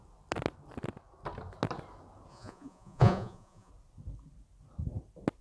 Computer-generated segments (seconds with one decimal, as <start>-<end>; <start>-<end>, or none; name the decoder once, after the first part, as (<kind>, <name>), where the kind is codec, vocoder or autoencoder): 2.3-3.7 (vocoder, Vocos)

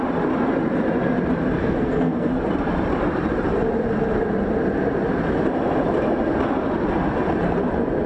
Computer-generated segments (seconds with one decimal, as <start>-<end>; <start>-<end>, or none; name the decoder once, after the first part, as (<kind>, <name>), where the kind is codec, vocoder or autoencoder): 1.6-2.3 (codec, SNAC)

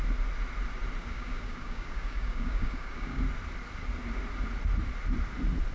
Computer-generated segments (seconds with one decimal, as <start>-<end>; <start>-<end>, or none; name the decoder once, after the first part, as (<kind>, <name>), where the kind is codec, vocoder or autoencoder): 1.0-3.2 (codec, DAC)

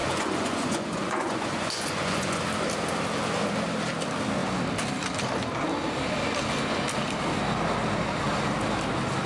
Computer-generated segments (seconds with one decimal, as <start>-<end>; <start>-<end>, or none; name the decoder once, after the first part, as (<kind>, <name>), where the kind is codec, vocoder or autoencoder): 0.0-2.4 (vocoder, Vocos)

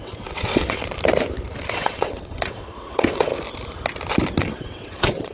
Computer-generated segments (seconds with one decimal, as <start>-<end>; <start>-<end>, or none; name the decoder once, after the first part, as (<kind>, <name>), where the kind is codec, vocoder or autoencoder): 0.0-0.8 (vocoder, WaveNeXt); 1.7-3.3; 4.4-5.3

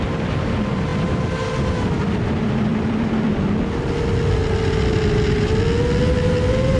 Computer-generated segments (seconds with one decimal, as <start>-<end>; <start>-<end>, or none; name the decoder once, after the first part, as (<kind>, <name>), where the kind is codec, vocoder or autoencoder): none

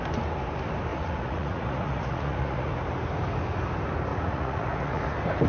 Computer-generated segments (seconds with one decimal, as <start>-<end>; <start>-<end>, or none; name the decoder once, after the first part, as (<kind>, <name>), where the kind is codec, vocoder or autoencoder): 0.9-2.7 (vocoder, Vocos); 4.1-5.0